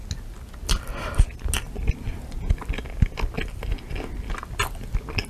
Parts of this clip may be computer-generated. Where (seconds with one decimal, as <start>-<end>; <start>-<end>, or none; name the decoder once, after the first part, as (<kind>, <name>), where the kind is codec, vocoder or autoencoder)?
none